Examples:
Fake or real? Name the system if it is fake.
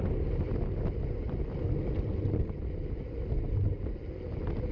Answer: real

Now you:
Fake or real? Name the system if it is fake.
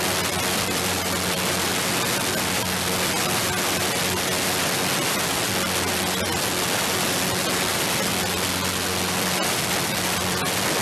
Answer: real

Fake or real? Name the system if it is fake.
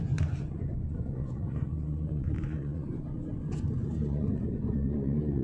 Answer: fake, vocoder, Vocos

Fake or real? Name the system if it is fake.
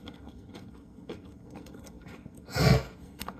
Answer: fake, codec, SNAC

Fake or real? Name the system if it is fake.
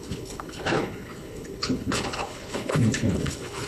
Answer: fake, codec, HILCodec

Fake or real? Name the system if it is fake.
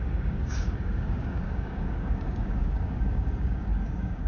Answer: fake, codec, DAC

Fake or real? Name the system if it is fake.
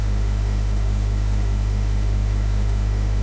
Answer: fake, autoencoder, DAC-VAE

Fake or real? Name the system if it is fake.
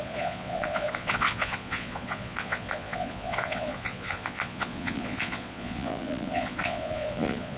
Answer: fake, vocoder, Vocos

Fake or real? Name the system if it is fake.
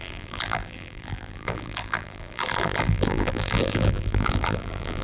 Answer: fake, vocoder, BigVGAN v2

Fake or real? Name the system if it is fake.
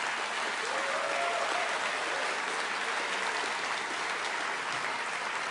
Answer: real